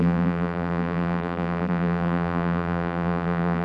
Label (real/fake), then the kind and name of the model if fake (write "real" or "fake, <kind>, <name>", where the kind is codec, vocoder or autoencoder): fake, vocoder, BigVGAN v2